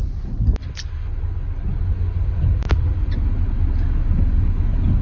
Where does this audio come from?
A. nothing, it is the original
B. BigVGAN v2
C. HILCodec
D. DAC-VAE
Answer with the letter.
A